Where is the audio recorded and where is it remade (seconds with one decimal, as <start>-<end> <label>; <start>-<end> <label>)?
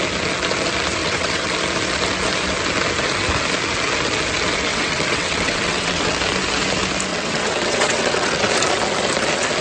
0.0-1.0 recorded; 1.0-1.5 remade; 1.5-4.7 recorded; 4.7-6.2 remade; 6.2-7.1 recorded; 7.1-8.5 remade; 8.5-9.6 recorded